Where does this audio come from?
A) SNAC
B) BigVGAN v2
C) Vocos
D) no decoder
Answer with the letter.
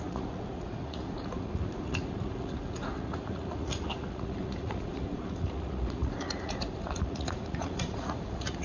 C